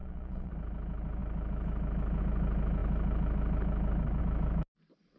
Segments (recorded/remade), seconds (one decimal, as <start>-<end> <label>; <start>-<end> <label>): 0.0-0.5 remade; 0.5-5.2 recorded